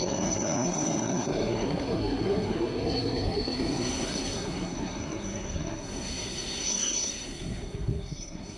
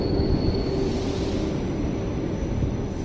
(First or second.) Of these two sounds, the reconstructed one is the first